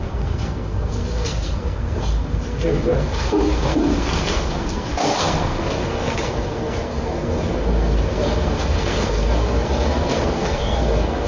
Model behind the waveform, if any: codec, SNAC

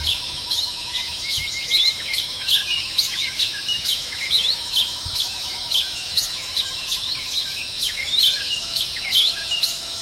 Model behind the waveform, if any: autoencoder, DAC-VAE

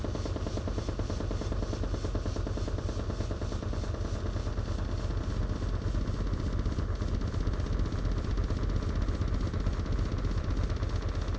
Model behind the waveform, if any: none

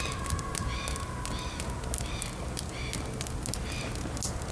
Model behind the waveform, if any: none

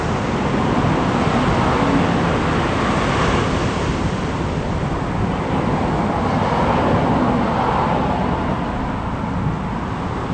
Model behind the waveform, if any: none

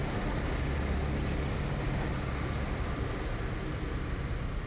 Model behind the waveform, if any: none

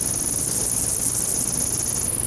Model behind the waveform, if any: none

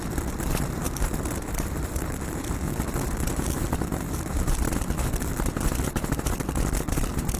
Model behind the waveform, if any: vocoder, BigVGAN v2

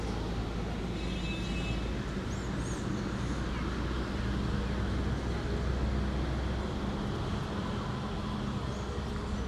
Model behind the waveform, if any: none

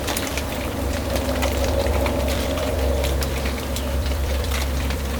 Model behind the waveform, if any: vocoder, BigVGAN v2